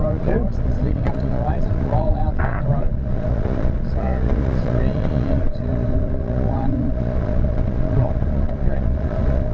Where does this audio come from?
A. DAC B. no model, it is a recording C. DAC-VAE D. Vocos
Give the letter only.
D